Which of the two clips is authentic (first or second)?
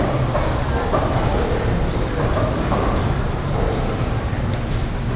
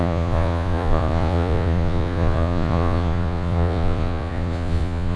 first